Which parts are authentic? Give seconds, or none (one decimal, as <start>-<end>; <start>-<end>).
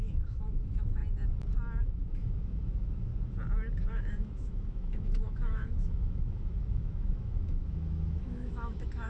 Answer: 1.0-1.8; 3.1-3.9